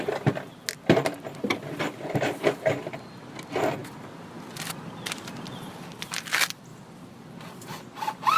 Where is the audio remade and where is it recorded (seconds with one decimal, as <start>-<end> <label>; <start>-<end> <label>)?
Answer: 0.0-6.7 recorded; 6.7-7.7 remade; 7.7-8.4 recorded